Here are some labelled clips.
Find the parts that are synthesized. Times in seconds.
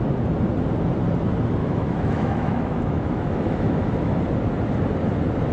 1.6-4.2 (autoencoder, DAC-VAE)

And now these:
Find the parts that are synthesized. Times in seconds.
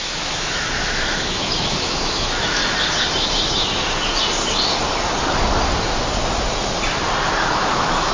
0.0-2.6 (autoencoder, DAC-VAE); 7.5-8.1